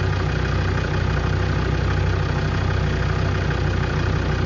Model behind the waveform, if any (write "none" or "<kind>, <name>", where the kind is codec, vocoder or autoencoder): none